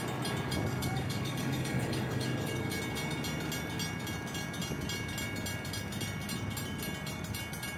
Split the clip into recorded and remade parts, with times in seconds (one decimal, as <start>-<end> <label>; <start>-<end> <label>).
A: 0.0-0.7 recorded; 0.7-2.8 remade; 2.8-7.8 recorded